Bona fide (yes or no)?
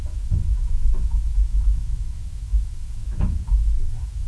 no